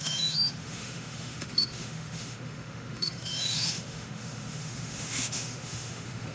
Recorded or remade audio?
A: remade